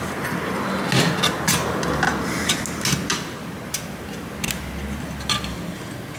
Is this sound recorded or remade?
recorded